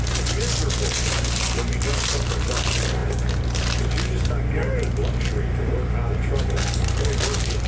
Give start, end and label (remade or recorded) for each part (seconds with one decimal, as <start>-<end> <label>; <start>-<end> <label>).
0.0-7.7 recorded